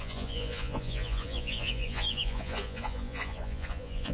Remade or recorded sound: remade